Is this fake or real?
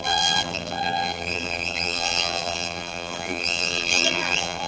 fake